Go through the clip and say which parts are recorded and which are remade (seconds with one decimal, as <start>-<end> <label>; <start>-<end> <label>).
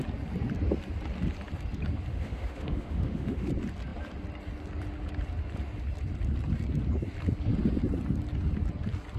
0.0-2.1 recorded; 2.1-3.5 remade; 3.5-9.2 recorded